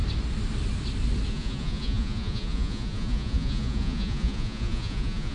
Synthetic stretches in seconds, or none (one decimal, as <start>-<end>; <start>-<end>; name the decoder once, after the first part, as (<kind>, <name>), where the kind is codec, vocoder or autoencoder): 1.3-5.3 (vocoder, Vocos)